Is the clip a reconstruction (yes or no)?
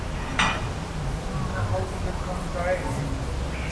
no